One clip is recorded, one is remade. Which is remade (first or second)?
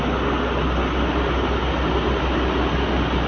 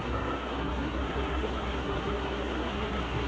second